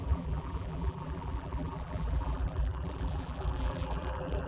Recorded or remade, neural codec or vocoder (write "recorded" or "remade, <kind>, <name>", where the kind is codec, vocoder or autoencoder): remade, vocoder, BigVGAN v2